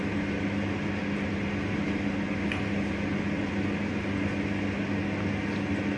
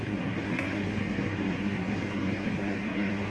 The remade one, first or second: second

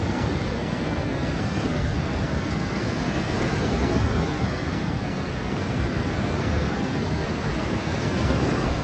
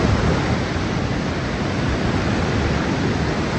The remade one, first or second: first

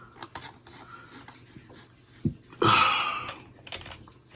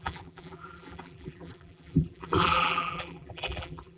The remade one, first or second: second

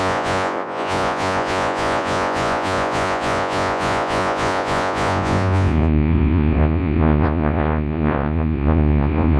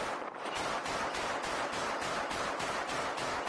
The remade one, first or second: first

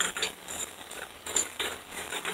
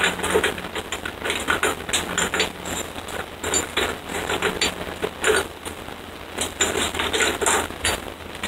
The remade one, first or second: first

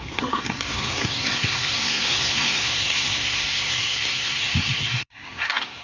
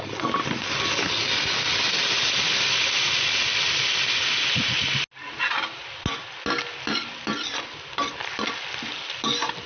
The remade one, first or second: first